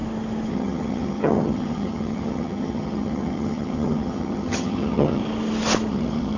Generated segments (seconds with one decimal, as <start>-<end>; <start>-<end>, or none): 0.5-5.2; 5.9-6.4